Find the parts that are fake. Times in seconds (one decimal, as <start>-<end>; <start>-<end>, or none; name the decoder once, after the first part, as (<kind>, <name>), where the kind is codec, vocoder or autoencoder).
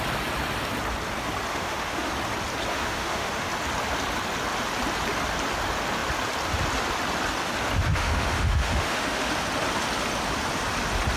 1.5-2.1 (autoencoder, DAC-VAE); 2.7-3.5; 8.0-9.3